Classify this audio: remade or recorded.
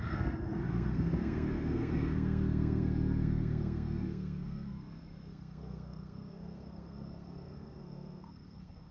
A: remade